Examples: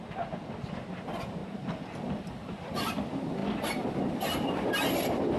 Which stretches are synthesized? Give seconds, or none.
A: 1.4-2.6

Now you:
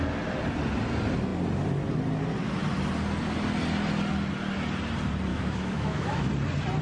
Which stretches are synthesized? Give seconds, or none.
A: 5.3-6.3

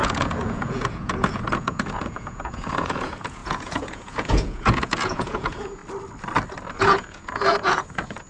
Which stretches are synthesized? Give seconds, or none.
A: 0.0-5.8; 6.7-8.3

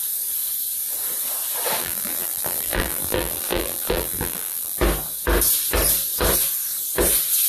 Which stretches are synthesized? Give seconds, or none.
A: 1.8-4.8

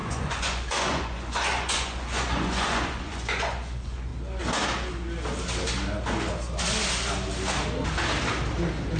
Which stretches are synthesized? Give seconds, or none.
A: 0.0-4.1

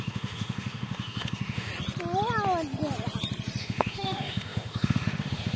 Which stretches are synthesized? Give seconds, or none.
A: 0.0-1.7; 3.6-5.6

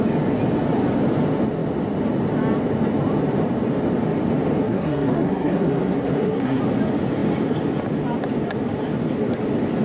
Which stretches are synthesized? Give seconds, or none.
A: 4.6-6.6